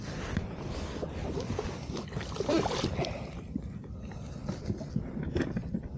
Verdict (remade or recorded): recorded